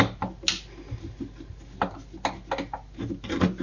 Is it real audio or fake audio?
real